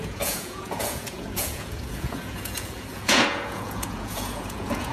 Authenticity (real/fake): fake